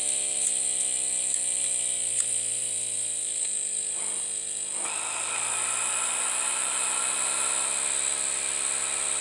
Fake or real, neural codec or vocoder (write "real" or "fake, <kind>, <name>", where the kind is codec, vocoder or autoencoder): real